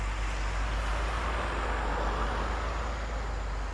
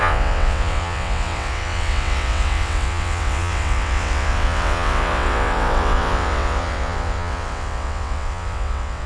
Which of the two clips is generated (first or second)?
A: second